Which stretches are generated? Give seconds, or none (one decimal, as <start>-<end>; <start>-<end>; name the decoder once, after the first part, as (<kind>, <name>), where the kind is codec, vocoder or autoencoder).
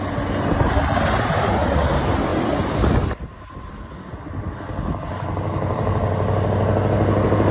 none